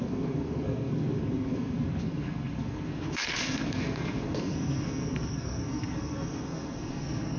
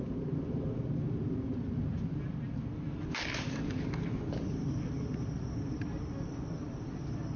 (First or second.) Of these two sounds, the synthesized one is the first